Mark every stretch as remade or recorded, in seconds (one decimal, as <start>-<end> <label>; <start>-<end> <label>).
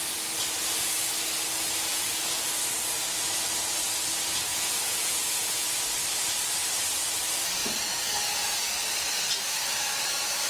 0.0-1.9 recorded; 1.9-2.4 remade; 2.4-4.5 recorded; 4.5-5.7 remade; 5.7-10.5 recorded